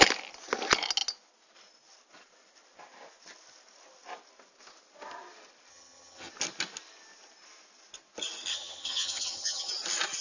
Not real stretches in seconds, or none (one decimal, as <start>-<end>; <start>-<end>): 5.7-6.3; 8.5-9.7